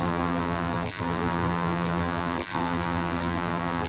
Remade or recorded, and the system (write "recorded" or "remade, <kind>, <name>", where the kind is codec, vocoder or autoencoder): remade, vocoder, BigVGAN v2